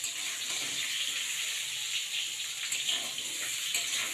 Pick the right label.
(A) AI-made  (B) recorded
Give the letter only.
A